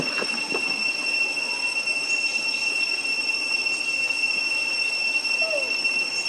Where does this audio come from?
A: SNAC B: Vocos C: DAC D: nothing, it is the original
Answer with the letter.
D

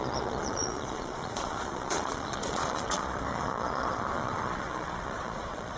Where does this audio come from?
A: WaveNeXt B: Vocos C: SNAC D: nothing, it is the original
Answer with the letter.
B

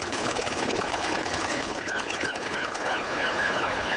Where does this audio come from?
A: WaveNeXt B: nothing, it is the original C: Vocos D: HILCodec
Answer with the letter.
D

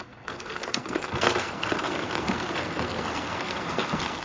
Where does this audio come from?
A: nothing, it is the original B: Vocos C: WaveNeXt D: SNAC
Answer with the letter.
D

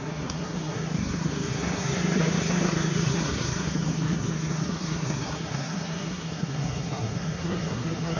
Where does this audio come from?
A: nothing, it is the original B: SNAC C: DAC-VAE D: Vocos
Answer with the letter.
B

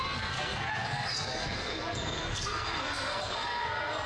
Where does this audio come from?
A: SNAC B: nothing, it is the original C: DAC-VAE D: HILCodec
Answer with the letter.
A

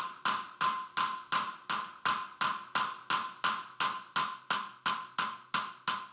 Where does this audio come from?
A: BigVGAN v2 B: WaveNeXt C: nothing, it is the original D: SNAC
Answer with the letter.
C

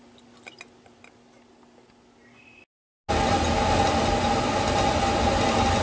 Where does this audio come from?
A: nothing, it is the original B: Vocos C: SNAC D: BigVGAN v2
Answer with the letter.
A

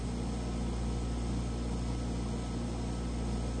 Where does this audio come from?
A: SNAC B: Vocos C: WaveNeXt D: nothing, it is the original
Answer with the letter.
D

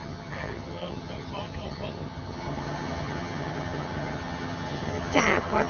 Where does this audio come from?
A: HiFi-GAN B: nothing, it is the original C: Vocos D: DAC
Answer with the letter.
A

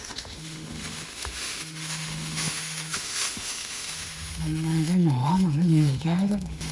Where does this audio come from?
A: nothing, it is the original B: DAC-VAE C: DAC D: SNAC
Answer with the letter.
B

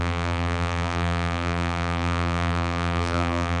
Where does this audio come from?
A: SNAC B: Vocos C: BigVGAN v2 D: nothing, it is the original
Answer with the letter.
C